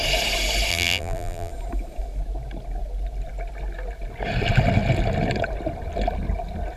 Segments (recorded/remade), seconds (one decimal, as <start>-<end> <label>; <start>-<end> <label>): 0.0-0.7 recorded; 0.7-1.5 remade; 1.5-6.8 recorded